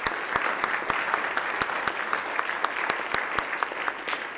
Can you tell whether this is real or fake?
real